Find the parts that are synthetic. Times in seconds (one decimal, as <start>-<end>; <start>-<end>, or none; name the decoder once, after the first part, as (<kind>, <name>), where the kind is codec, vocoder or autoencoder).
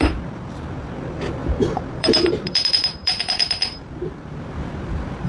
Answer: 0.0-5.3 (vocoder, BigVGAN v2)